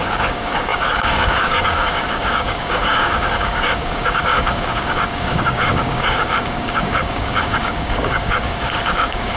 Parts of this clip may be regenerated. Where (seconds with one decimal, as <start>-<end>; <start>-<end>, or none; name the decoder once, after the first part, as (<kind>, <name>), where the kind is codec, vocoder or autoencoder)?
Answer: 0.0-9.4 (codec, DAC)